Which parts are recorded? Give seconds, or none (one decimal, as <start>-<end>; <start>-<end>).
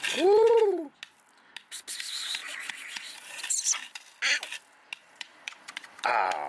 0.0-2.4; 3.4-5.0; 6.1-6.5